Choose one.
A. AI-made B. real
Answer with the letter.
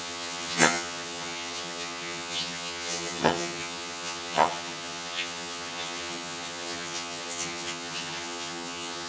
A